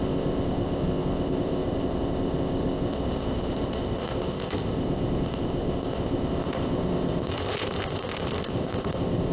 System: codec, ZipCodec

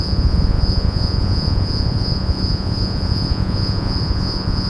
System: vocoder, Vocos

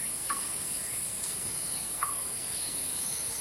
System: codec, SNAC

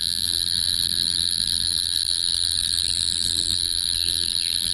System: vocoder, BigVGAN v2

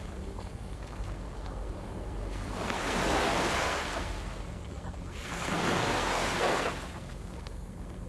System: codec, SNAC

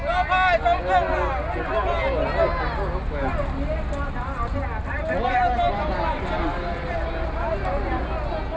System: none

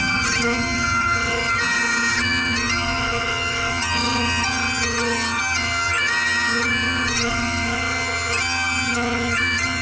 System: vocoder, HiFi-GAN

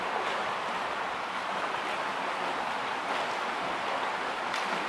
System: none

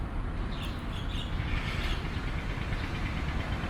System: none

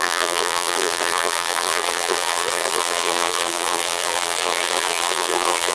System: vocoder, BigVGAN v2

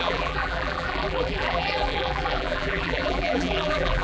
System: vocoder, BigVGAN v2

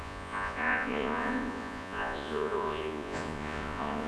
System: vocoder, Vocos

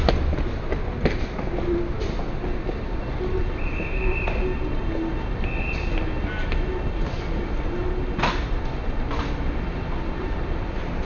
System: none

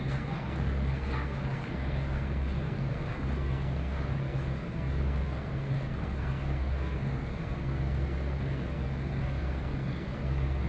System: codec, SNAC